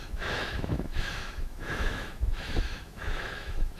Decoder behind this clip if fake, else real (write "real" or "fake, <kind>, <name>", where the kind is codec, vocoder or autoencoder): fake, autoencoder, DAC-VAE